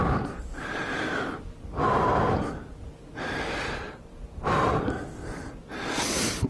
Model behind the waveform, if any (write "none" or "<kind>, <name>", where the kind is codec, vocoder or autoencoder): none